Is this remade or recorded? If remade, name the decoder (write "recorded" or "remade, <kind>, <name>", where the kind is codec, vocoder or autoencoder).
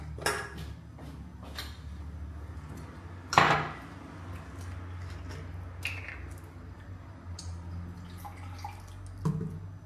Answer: recorded